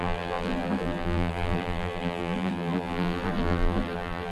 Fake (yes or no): yes